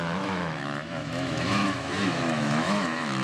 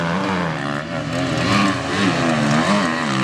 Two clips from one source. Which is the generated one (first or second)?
first